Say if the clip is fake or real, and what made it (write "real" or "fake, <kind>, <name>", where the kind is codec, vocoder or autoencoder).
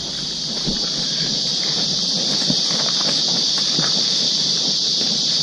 fake, vocoder, BigVGAN v2